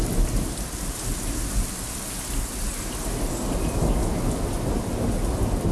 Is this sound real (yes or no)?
yes